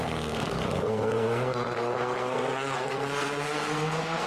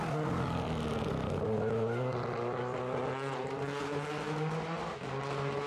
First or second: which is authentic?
second